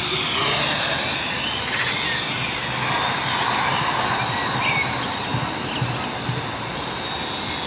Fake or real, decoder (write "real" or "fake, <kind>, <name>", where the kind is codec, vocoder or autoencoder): real